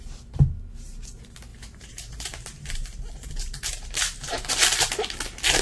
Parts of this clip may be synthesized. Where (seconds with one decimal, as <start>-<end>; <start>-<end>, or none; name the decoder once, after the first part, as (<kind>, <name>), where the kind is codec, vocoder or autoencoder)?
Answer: 1.5-4.5 (vocoder, BigVGAN v2)